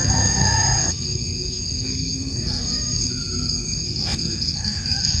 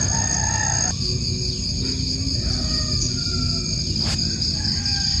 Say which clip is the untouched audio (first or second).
second